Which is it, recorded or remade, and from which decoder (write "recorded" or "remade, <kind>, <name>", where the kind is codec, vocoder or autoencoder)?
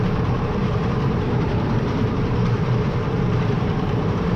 remade, vocoder, BigVGAN v2